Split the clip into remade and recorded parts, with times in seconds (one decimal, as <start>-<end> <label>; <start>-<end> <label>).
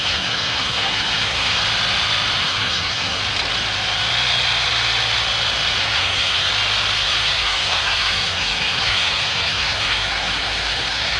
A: 0.0-1.6 remade; 1.6-2.4 recorded; 2.4-3.2 remade; 3.2-5.8 recorded; 5.8-6.5 remade; 6.5-7.0 recorded; 7.0-11.2 remade